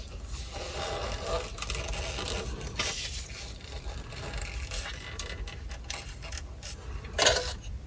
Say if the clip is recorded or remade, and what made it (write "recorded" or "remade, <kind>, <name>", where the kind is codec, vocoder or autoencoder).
recorded